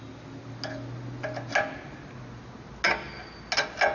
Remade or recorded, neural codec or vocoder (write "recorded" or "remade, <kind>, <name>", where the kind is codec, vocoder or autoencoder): recorded